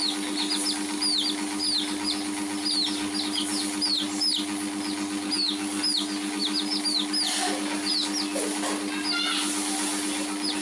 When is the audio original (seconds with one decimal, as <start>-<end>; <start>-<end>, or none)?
0.0-10.6